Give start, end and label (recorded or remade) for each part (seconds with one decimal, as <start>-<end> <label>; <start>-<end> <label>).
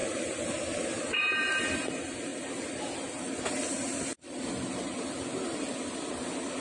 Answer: 0.0-6.6 recorded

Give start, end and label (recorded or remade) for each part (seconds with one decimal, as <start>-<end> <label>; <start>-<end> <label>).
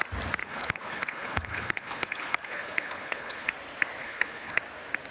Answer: 0.0-0.4 recorded; 0.4-3.5 remade; 3.5-4.0 recorded; 4.0-4.6 remade; 4.6-5.1 recorded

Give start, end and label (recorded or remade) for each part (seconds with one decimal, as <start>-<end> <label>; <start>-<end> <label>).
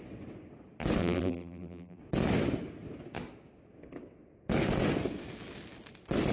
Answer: 0.0-1.0 recorded; 1.0-2.0 remade; 2.0-6.3 recorded